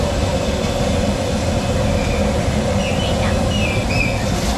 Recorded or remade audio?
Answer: recorded